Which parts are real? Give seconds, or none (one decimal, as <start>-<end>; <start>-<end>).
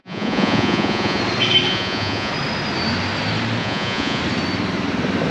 1.2-1.7; 2.3-3.6; 4.2-5.3